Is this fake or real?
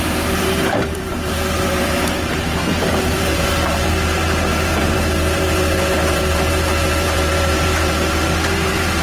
fake